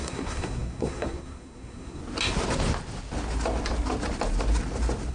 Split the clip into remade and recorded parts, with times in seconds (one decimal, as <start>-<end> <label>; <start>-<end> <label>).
0.0-2.0 remade; 2.0-5.1 recorded